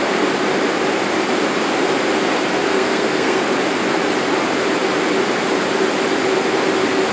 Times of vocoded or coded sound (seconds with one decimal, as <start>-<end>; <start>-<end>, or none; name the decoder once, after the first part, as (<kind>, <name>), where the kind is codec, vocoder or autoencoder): 2.7-3.4 (codec, SNAC)